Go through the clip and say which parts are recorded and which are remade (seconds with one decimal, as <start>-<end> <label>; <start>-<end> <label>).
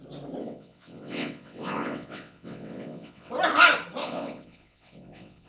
0.0-0.4 recorded; 0.4-3.3 remade; 3.3-4.0 recorded; 4.0-5.5 remade